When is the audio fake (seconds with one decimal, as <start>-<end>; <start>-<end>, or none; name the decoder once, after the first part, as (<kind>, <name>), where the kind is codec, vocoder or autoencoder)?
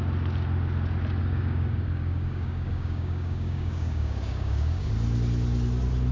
1.2-4.9 (codec, DAC)